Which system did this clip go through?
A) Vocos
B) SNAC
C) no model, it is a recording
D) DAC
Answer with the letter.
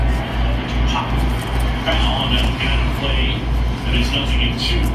C